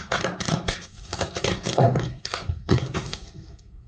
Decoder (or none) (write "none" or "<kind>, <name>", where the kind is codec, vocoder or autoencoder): codec, SNAC